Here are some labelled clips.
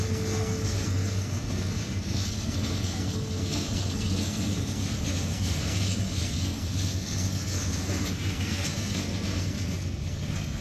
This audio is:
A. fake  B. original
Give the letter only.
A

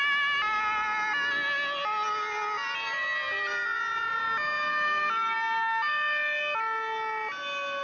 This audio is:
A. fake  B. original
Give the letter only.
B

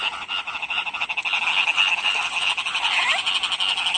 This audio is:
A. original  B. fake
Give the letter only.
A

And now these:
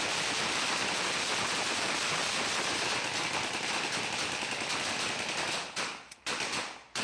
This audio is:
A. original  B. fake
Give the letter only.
A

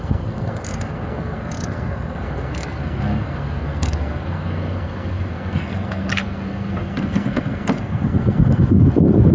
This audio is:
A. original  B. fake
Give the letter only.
B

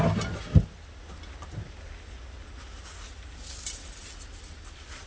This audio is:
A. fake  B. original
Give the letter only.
B